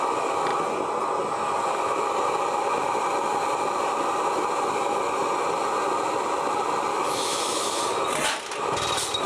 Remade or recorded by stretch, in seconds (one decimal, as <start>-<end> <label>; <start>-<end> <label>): 0.0-6.9 recorded; 6.9-7.8 remade; 7.8-9.3 recorded